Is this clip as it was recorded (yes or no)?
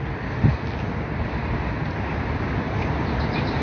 yes